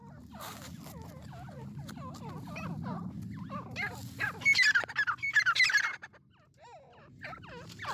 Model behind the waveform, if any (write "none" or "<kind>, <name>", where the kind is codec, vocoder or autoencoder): none